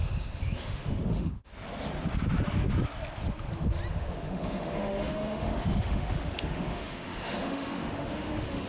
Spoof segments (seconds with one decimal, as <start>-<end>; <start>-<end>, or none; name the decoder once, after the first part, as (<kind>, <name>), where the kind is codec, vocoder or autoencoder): 0.0-1.5 (autoencoder, DAC-VAE); 3.9-8.7